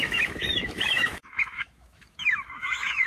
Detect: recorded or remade remade